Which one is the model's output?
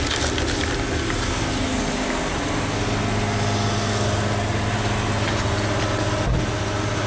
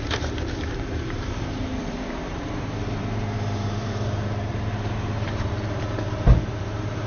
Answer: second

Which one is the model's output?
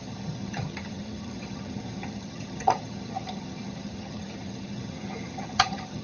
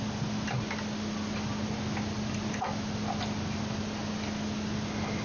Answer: first